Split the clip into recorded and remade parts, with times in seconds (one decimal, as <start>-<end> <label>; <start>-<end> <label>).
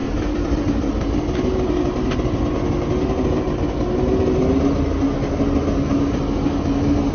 0.0-1.3 remade; 1.3-7.1 recorded